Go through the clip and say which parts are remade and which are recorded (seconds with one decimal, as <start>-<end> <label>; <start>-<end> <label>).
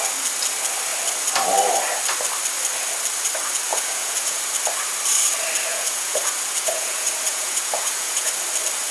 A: 0.0-3.7 recorded; 3.7-4.4 remade; 4.4-5.7 recorded; 5.7-8.3 remade; 8.3-8.9 recorded